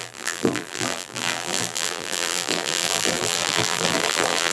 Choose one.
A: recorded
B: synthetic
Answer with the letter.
B